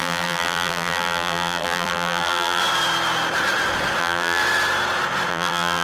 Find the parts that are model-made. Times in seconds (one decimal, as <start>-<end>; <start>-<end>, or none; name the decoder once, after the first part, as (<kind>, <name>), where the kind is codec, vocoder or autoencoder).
0.0-2.6 (vocoder, BigVGAN v2); 4.0-4.4; 5.3-5.8